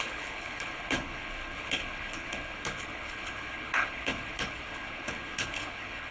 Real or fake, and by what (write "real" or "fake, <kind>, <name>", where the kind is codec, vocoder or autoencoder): fake, codec, HILCodec